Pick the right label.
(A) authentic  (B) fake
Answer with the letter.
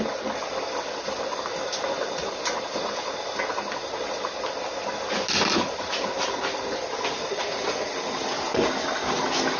A